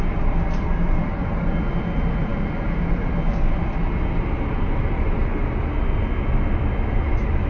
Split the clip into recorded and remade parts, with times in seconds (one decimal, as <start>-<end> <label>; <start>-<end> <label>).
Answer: 0.0-7.5 recorded